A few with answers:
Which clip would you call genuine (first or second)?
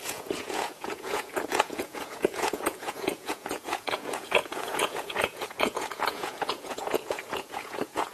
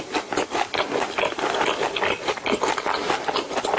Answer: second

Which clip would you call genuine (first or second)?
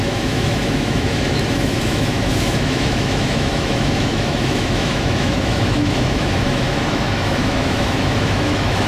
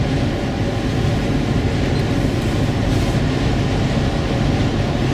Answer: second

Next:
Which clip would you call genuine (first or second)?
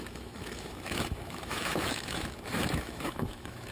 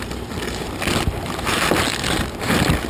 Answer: second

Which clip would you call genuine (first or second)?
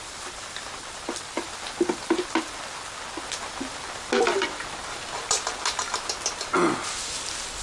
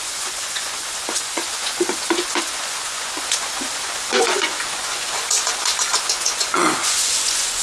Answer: first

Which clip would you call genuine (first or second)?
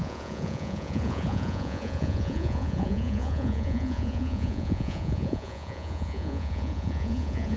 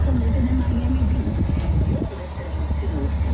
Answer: second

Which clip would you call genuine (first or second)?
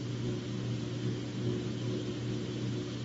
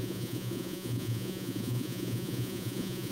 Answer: first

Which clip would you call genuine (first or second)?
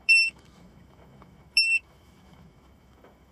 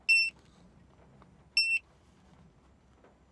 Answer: second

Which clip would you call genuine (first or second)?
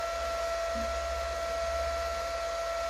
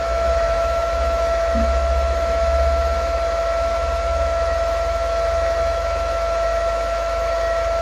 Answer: first